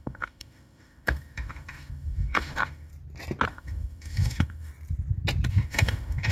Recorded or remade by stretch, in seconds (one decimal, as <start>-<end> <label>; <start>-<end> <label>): 0.0-2.9 remade; 2.9-3.5 recorded; 3.5-4.7 remade; 4.7-5.5 recorded; 5.5-6.3 remade